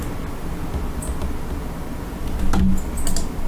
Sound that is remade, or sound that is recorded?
recorded